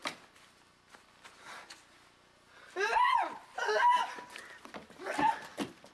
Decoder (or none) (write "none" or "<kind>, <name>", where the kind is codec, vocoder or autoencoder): none